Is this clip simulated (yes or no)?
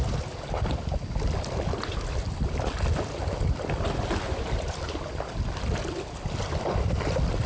no